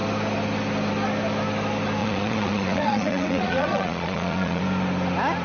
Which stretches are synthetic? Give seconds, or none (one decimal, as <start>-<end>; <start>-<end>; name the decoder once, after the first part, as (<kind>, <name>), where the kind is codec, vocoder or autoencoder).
2.0-4.6 (vocoder, Vocos)